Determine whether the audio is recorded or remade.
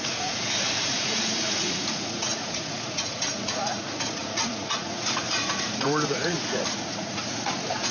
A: remade